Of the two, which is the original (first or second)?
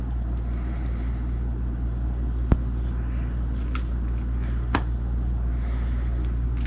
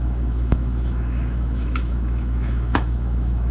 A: first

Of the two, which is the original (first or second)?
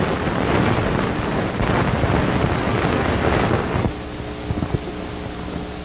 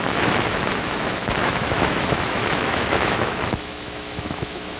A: first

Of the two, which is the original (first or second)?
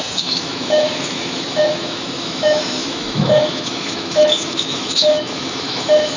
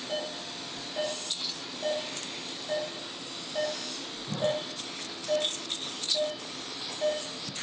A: second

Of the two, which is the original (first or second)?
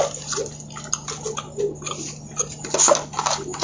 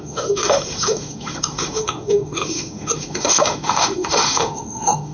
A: first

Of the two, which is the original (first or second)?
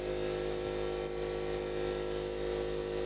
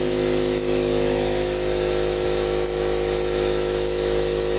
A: first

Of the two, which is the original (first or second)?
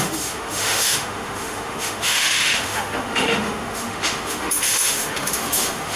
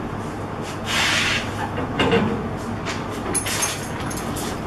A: second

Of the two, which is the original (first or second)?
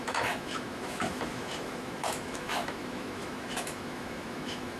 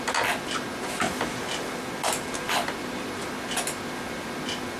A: second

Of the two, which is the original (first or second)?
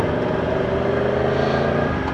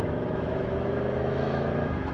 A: first